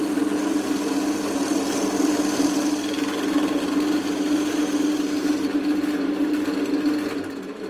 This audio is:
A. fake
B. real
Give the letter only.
B